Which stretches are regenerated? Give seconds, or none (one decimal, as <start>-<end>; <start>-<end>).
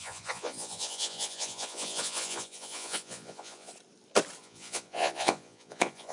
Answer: 0.0-3.7; 4.4-6.1